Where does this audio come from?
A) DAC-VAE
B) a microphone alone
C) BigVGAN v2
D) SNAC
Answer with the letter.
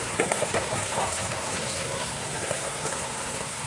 D